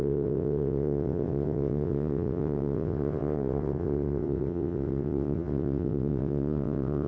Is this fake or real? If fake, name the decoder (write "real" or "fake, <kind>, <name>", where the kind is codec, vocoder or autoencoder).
fake, vocoder, WaveNeXt